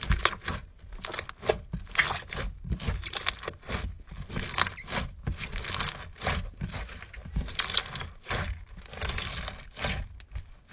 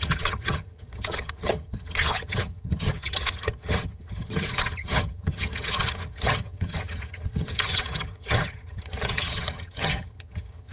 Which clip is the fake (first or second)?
second